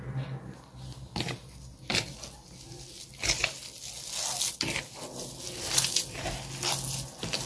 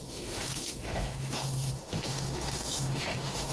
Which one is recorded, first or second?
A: first